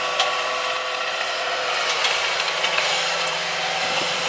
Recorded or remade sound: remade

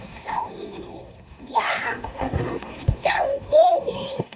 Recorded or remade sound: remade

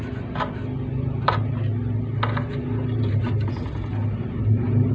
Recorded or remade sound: recorded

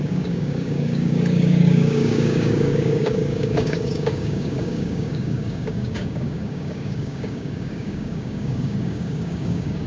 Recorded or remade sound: remade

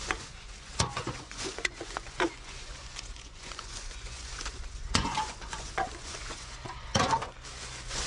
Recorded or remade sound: remade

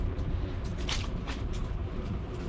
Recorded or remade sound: recorded